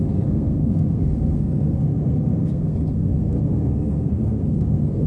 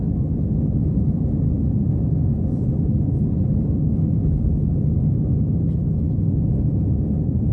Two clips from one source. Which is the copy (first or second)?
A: first